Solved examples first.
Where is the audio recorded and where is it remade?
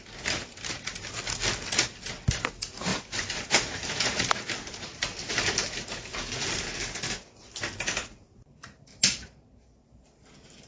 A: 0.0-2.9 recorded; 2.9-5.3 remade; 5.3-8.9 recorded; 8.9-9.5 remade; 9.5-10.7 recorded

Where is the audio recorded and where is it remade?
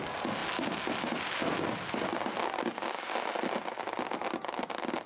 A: 0.0-5.1 recorded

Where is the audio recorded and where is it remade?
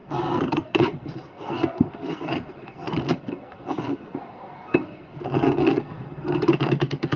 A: 0.0-7.2 remade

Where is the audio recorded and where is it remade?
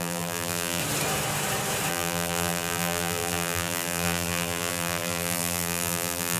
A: 0.0-0.8 remade; 0.8-1.9 recorded; 1.9-6.4 remade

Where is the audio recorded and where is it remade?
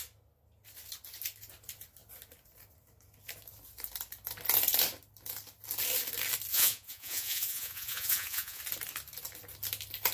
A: 0.0-6.5 recorded; 6.5-8.6 remade; 8.6-10.1 recorded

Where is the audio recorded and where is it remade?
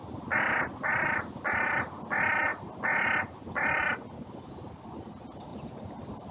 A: 0.0-6.3 recorded